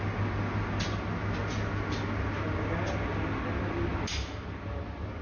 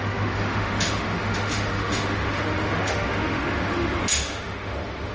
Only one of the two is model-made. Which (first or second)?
second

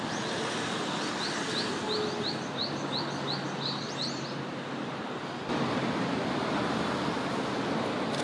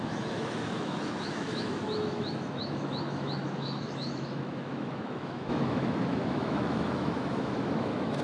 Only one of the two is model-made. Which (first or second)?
second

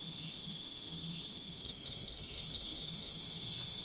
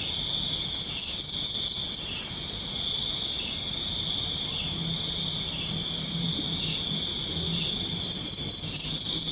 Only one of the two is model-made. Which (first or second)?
first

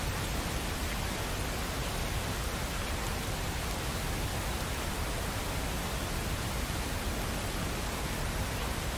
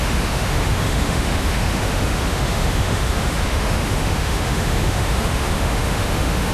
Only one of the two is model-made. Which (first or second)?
second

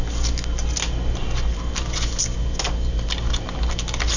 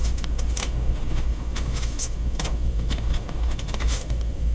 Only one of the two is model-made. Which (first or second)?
second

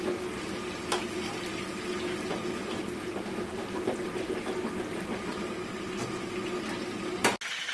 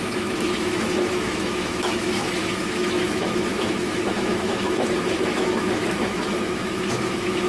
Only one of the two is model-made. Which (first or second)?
second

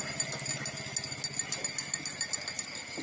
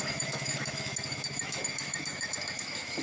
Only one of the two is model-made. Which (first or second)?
second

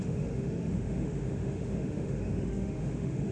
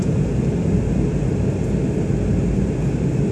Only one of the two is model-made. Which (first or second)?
first